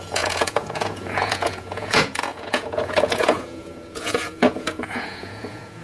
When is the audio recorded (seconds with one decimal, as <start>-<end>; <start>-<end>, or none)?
none